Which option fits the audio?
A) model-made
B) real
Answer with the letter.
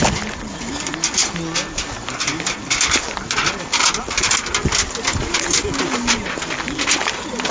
B